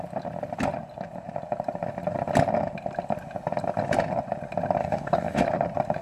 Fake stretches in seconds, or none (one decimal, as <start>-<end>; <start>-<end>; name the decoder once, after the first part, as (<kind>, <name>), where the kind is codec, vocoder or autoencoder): 4.8-5.4 (codec, DAC)